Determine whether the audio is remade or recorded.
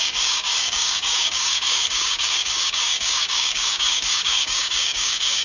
remade